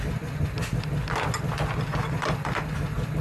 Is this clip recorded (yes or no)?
yes